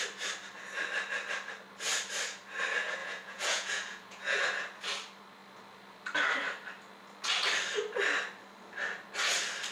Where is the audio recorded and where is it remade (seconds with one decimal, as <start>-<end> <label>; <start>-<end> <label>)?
0.0-3.0 recorded; 3.0-4.4 remade; 4.4-9.7 recorded